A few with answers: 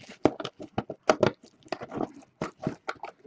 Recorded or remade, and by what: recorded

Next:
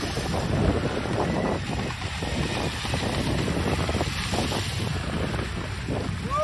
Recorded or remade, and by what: recorded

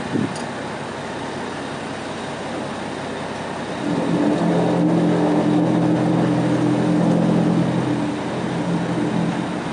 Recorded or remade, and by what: recorded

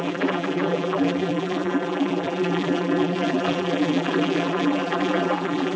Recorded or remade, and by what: remade, vocoder, BigVGAN v2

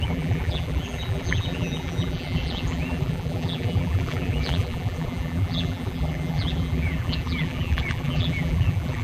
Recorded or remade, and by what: remade, vocoder, BigVGAN v2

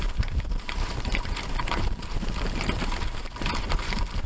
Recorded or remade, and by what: remade, vocoder, BigVGAN v2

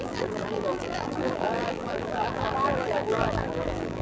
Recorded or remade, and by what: remade, vocoder, BigVGAN v2